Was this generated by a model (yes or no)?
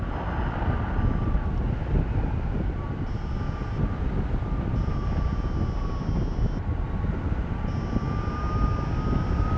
no